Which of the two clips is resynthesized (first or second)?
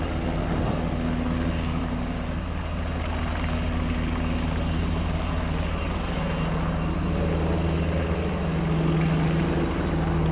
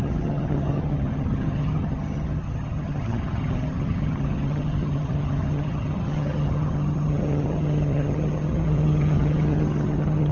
second